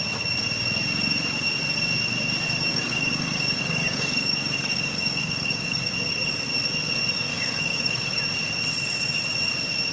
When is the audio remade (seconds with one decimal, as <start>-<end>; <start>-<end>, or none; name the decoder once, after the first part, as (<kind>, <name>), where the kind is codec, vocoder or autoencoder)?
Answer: 2.7-5.9 (codec, DAC); 7.3-8.2